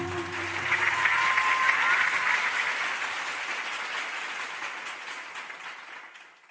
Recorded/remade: recorded